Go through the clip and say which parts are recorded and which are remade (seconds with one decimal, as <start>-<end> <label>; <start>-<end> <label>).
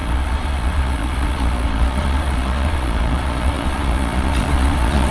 0.0-5.1 remade